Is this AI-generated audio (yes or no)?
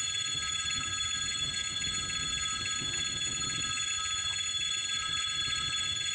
yes